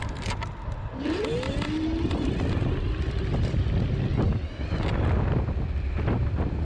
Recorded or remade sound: recorded